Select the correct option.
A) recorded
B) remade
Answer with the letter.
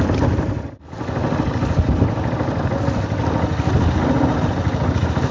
A